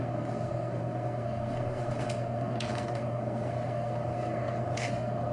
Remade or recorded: remade